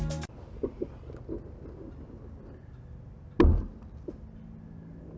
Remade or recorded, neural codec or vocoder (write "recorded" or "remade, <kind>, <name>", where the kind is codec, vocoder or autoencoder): recorded